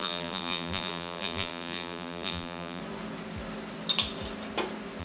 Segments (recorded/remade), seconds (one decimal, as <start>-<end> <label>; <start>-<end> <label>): 0.0-2.8 remade; 2.8-5.0 recorded